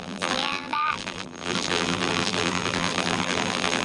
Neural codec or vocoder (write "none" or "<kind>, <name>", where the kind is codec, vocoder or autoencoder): vocoder, BigVGAN v2